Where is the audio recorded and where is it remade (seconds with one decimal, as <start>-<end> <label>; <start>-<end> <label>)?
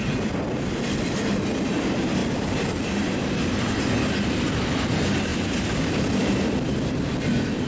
0.0-5.3 recorded; 5.3-6.3 remade; 6.3-7.7 recorded